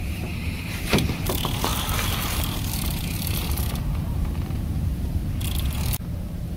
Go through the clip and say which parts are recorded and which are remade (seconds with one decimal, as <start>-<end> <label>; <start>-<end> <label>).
0.0-5.2 remade; 5.2-5.9 recorded; 5.9-6.6 remade